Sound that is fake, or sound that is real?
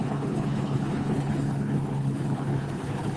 fake